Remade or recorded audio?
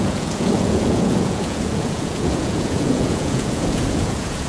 remade